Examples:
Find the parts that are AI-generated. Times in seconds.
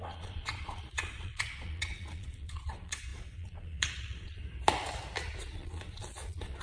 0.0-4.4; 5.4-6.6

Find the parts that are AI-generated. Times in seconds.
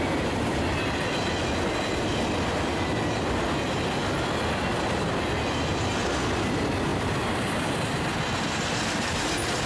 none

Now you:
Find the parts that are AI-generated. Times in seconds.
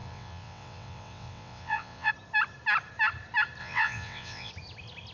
0.0-2.1; 3.6-4.5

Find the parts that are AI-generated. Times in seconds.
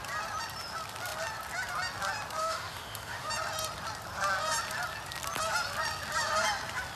2.4-3.3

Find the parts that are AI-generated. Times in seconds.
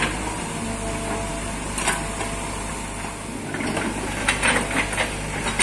none